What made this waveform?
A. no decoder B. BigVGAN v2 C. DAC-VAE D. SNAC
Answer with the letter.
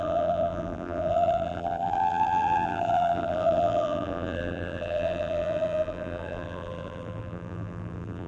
B